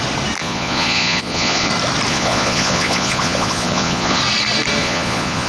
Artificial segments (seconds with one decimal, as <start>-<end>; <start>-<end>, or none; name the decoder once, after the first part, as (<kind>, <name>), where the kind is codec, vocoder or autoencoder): 0.4-1.7 (vocoder, Vocos); 2.1-4.2; 4.8-5.5